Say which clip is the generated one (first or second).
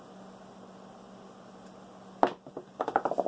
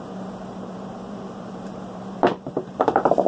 second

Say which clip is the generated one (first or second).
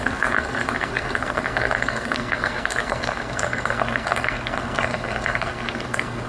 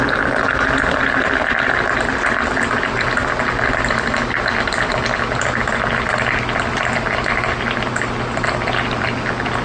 first